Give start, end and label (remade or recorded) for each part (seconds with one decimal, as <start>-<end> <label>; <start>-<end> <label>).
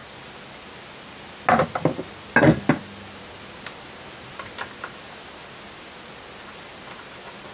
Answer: 0.0-7.5 recorded